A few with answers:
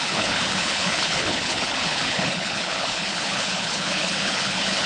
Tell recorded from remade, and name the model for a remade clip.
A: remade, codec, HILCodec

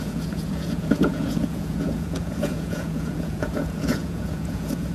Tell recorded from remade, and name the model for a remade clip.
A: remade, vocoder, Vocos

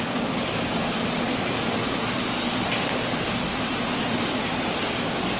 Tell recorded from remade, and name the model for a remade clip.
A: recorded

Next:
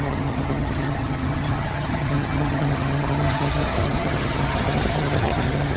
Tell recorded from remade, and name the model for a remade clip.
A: remade, vocoder, HiFi-GAN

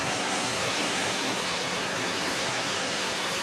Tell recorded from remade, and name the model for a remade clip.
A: remade, codec, SNAC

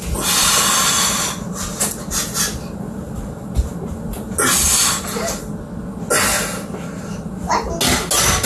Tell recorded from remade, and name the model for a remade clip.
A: recorded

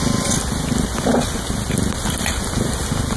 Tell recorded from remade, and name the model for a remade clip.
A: recorded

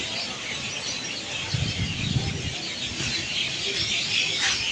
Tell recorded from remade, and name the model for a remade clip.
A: recorded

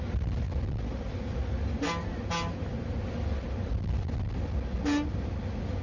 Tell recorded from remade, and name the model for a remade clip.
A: recorded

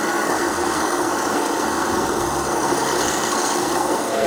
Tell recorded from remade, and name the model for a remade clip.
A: remade, codec, SNAC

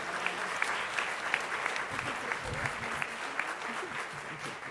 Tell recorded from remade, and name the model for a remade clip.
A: recorded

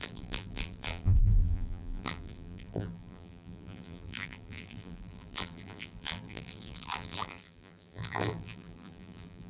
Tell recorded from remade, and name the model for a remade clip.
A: remade, vocoder, BigVGAN v2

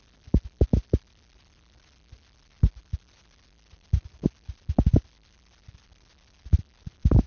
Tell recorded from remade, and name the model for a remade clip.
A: recorded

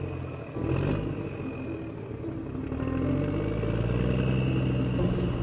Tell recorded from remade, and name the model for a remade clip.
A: recorded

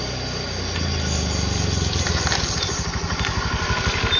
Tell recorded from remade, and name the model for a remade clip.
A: recorded